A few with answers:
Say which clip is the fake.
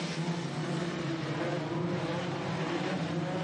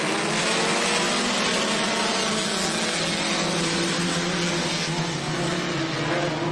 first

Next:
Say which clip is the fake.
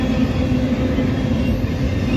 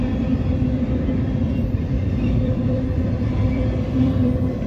second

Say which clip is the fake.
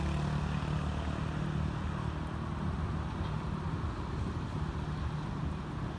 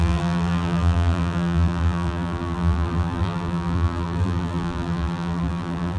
second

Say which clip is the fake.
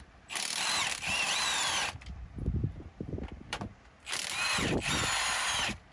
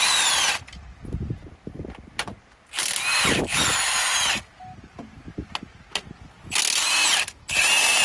first